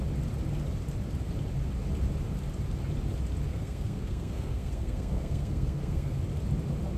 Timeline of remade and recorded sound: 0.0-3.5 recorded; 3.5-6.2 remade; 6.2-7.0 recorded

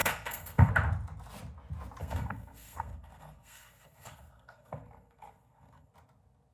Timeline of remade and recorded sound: 0.0-0.7 remade; 0.7-2.0 recorded; 2.0-5.9 remade; 5.9-6.5 recorded

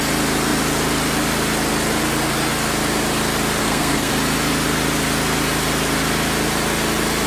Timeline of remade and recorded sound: 0.0-3.6 recorded; 3.6-4.1 remade; 4.1-7.3 recorded